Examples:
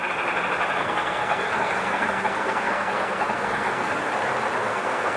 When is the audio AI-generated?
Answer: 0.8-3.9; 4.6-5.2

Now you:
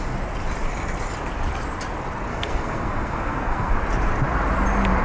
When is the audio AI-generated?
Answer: 2.3-3.7